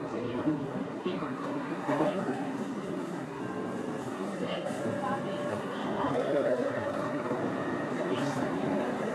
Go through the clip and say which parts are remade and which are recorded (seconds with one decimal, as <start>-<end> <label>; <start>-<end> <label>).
0.0-3.4 remade; 3.4-4.0 recorded; 4.0-4.8 remade; 4.8-5.5 recorded; 5.5-7.4 remade; 7.4-7.9 recorded; 7.9-9.1 remade